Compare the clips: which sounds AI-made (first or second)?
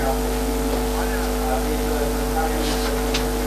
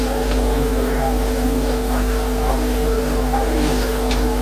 second